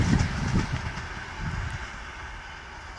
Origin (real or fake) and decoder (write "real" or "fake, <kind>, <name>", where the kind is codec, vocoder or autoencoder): real